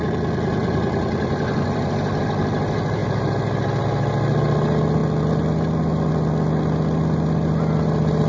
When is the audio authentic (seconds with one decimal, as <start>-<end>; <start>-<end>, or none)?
0.0-0.6; 2.3-8.3